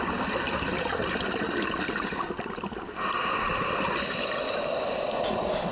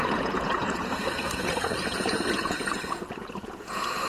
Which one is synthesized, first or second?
second